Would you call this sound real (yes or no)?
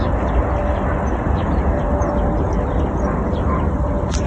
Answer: yes